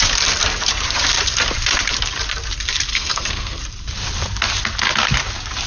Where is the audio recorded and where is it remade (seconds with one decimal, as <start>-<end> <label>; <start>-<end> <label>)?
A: 0.0-2.9 recorded; 2.9-3.6 remade; 3.6-5.7 recorded